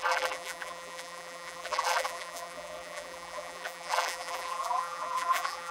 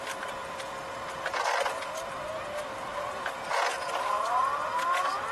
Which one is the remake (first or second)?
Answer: first